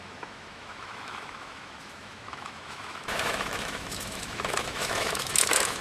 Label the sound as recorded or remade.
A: remade